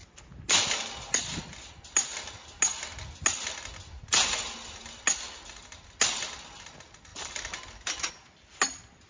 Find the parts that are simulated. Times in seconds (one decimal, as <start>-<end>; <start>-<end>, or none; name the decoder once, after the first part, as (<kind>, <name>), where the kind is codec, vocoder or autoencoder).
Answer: none